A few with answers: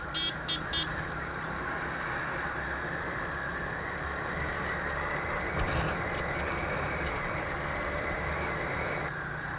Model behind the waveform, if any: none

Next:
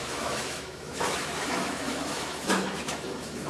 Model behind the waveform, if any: autoencoder, DAC-VAE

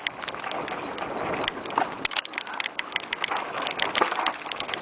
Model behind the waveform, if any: none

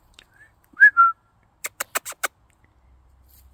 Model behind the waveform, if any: none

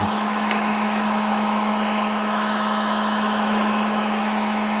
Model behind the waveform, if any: autoencoder, DAC-VAE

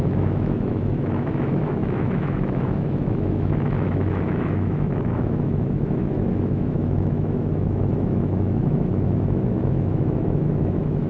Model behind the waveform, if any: autoencoder, DAC-VAE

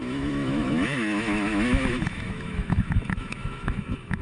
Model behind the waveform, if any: autoencoder, DAC-VAE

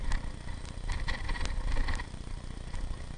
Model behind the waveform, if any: none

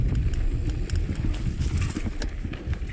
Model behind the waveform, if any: none